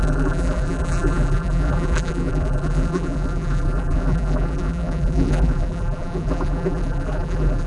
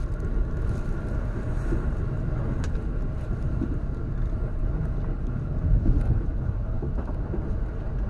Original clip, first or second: second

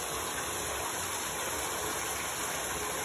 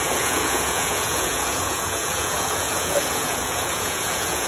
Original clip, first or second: first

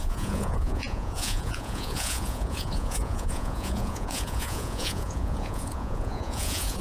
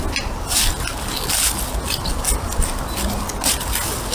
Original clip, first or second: second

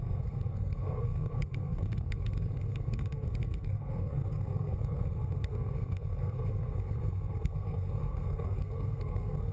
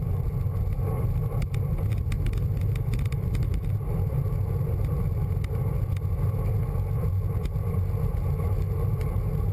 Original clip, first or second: second